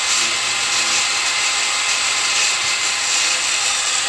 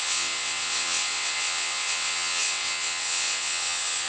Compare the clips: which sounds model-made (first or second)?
second